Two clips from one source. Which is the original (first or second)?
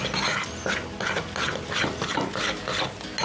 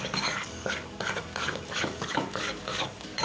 first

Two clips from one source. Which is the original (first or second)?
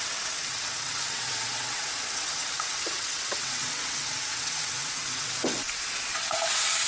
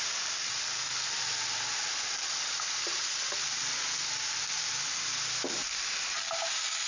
second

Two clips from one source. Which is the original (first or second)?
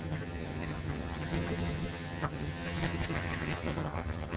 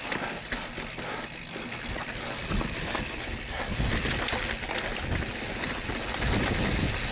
second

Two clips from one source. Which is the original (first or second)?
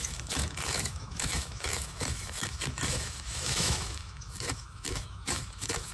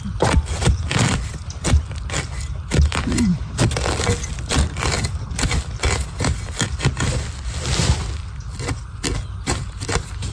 second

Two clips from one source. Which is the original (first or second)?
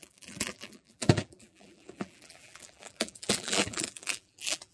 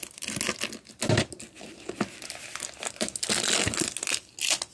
second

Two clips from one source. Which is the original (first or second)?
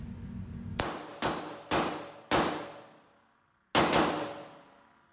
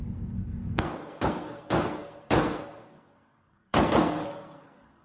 first